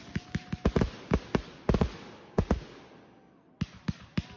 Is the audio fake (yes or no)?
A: no